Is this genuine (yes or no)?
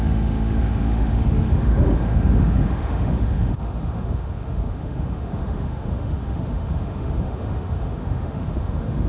no